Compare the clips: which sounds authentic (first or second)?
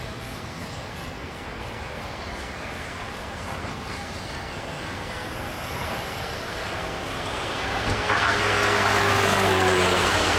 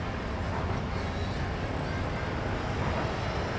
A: second